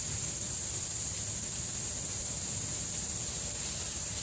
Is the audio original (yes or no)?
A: yes